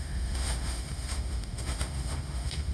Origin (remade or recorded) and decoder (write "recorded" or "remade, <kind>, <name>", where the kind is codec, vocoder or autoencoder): remade, autoencoder, DAC-VAE